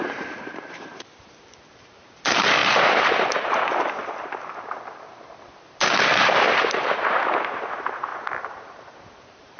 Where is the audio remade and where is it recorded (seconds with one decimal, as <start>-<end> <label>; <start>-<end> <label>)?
0.0-4.0 remade; 4.0-6.1 recorded; 6.1-9.6 remade